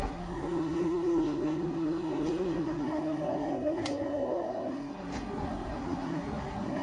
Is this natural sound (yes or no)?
no